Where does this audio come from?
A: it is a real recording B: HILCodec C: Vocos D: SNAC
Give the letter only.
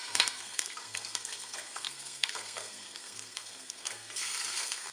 D